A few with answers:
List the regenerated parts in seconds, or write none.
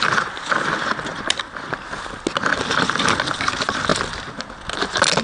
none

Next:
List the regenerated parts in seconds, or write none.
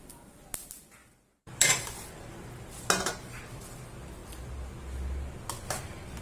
1.0-3.6 (vocoder, BigVGAN v2)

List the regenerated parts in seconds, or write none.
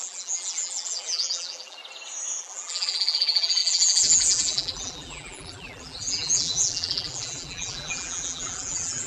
0.0-1.8 (vocoder, BigVGAN v2); 2.4-9.1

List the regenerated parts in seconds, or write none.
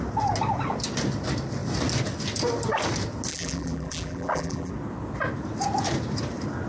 3.3-4.7 (vocoder, BigVGAN v2)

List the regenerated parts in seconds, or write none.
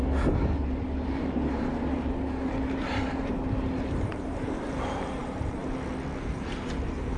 0.6-5.6 (vocoder, BigVGAN v2); 6.2-7.2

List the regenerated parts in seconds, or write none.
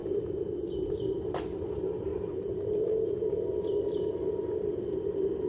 0.0-5.5 (vocoder, BigVGAN v2)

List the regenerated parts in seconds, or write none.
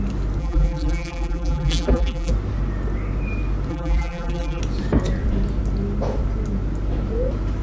0.4-2.3 (vocoder, BigVGAN v2); 3.7-4.6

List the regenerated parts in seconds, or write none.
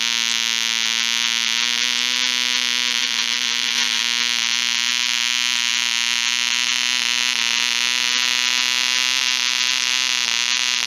3.0-4.0 (vocoder, BigVGAN v2)